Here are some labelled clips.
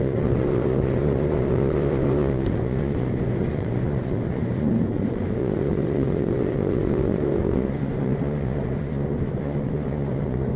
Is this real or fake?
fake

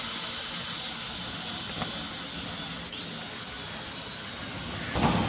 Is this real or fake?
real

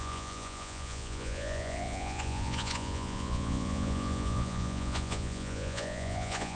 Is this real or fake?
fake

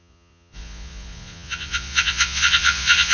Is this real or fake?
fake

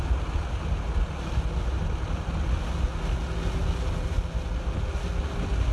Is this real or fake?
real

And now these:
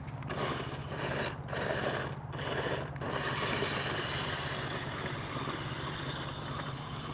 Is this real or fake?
real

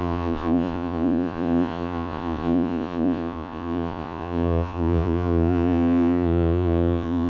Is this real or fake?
fake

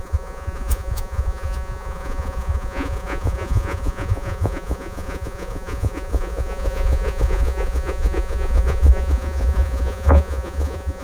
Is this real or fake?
fake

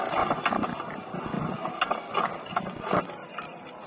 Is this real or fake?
real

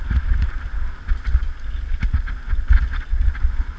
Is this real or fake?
real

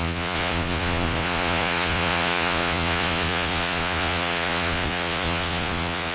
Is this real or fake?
fake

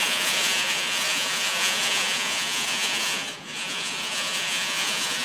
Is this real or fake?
fake